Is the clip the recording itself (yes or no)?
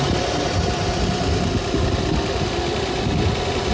yes